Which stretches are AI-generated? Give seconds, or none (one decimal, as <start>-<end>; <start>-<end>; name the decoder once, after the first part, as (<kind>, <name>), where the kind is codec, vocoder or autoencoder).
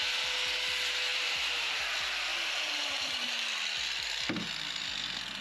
1.1-1.8 (vocoder, BigVGAN v2); 2.3-3.3